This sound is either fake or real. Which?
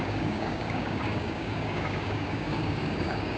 fake